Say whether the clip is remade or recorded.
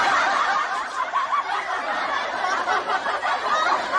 recorded